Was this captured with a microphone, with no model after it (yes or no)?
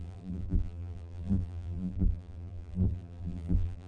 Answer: no